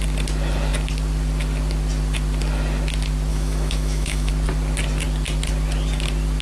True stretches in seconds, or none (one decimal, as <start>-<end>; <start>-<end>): 0.0-3.3; 4.3-6.4